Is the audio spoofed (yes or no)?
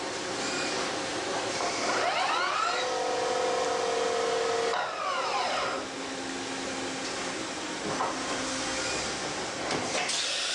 no